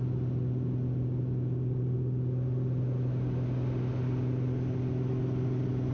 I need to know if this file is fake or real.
real